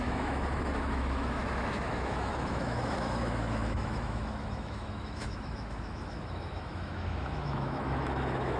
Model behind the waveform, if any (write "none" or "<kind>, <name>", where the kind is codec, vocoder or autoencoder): autoencoder, DAC-VAE